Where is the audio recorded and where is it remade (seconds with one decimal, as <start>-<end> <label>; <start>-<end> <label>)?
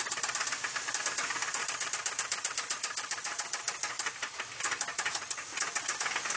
0.0-1.6 recorded; 1.6-4.4 remade; 4.4-4.9 recorded; 4.9-5.5 remade; 5.5-6.4 recorded